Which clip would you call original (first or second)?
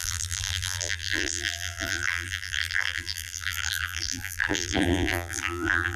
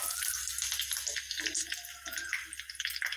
second